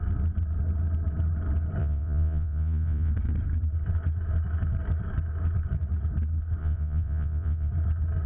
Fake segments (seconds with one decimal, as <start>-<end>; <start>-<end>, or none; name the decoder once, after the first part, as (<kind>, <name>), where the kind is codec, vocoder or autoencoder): 1.8-3.1 (vocoder, Vocos); 6.6-7.7